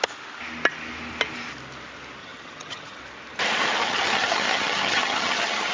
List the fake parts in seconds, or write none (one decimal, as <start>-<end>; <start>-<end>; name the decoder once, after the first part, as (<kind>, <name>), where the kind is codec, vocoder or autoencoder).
2.2-3.0 (vocoder, HiFi-GAN); 3.8-5.7